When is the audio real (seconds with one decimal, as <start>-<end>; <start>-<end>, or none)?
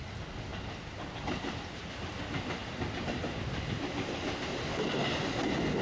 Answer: 0.0-0.5; 1.9-2.6; 4.2-5.8